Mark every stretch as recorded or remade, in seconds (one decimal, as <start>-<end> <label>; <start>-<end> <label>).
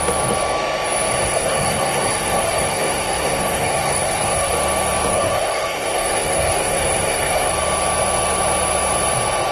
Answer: 0.0-1.2 recorded; 1.2-4.5 remade; 4.5-5.1 recorded; 5.1-7.5 remade; 7.5-9.5 recorded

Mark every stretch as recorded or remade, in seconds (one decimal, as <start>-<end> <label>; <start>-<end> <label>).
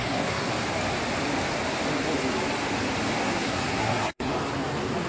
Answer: 0.0-0.5 remade; 0.5-3.2 recorded; 3.2-4.3 remade; 4.3-5.1 recorded